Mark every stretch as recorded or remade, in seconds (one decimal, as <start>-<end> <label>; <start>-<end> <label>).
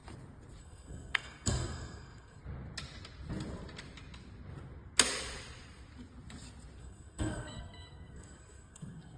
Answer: 0.0-0.6 recorded; 0.6-2.4 remade; 2.4-6.8 recorded; 6.8-9.2 remade